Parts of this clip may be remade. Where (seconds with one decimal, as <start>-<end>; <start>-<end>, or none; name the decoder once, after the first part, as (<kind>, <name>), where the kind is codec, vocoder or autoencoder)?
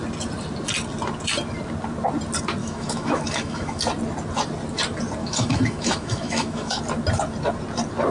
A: 2.6-3.8 (autoencoder, DAC-VAE); 5.2-6.8